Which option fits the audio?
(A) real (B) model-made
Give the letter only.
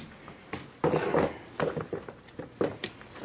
A